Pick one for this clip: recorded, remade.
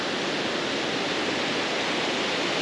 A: recorded